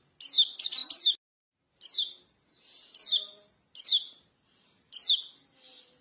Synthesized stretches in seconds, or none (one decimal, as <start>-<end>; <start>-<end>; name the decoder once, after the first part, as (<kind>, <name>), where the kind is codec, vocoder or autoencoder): none